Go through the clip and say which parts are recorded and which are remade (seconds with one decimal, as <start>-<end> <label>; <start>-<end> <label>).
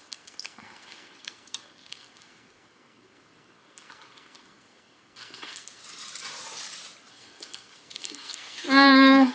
0.0-5.8 remade; 5.8-7.1 recorded; 7.1-9.3 remade